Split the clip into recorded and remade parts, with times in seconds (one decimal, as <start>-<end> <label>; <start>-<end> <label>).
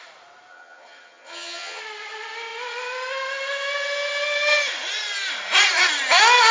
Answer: 0.0-0.5 recorded; 0.5-1.8 remade; 1.8-6.5 recorded